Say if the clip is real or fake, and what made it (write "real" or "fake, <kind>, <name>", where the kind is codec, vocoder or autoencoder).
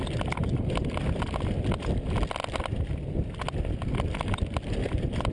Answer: real